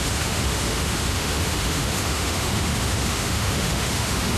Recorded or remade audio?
remade